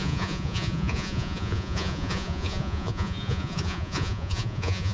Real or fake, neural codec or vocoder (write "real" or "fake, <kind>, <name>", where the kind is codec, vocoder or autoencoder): fake, vocoder, Vocos